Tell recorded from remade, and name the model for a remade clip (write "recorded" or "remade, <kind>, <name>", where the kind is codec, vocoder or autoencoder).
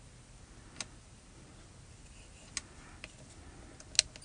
recorded